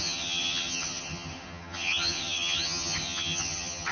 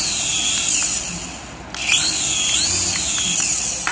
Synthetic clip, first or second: first